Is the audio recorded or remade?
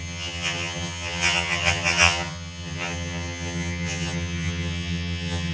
remade